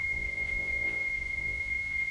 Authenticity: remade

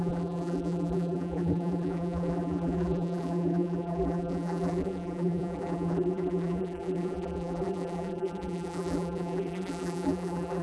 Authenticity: remade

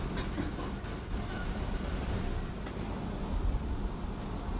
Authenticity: recorded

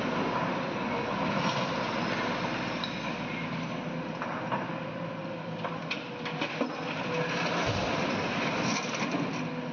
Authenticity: recorded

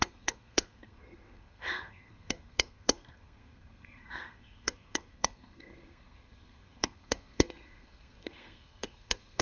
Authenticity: remade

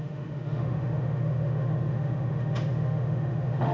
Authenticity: remade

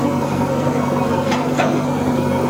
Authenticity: remade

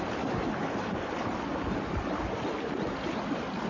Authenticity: recorded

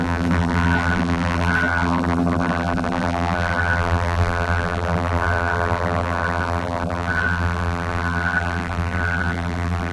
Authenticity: remade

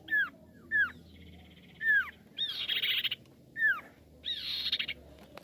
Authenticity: recorded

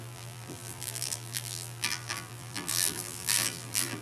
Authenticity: remade